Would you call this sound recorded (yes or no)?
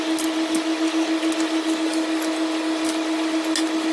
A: yes